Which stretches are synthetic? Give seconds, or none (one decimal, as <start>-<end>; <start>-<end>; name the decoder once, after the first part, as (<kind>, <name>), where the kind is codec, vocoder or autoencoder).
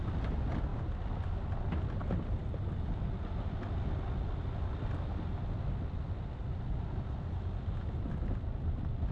none